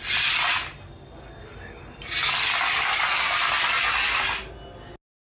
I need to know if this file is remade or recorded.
recorded